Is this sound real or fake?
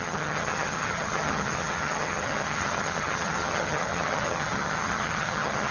fake